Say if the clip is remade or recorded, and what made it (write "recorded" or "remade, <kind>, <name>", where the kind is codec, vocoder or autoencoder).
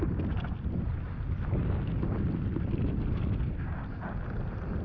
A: recorded